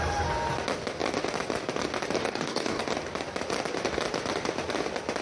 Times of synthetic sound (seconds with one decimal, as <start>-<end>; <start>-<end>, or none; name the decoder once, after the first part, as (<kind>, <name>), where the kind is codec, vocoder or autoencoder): 2.2-2.8 (codec, DAC)